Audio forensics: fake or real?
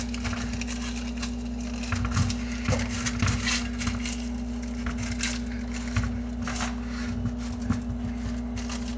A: real